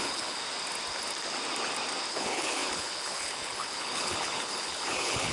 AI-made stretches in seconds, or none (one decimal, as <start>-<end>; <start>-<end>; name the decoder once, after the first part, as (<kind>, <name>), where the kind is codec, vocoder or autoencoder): 0.0-0.4 (codec, HILCodec); 2.1-5.3